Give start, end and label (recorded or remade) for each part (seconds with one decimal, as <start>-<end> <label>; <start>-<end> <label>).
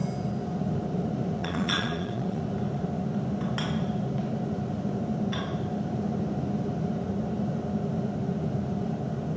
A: 0.0-1.4 recorded; 1.4-2.4 remade; 2.4-9.4 recorded